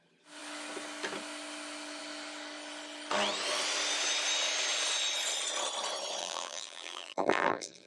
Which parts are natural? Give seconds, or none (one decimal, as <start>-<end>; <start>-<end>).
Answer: 0.0-6.2